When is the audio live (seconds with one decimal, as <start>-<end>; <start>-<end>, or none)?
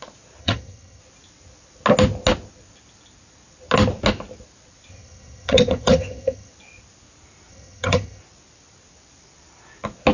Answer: 0.0-0.4; 1.0-4.9; 6.5-7.5; 8.2-10.1